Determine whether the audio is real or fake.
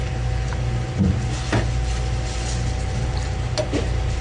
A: real